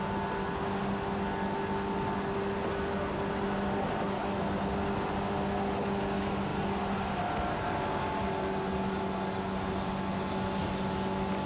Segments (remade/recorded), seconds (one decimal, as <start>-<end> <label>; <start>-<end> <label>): 0.0-11.5 recorded